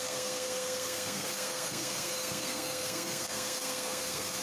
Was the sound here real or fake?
fake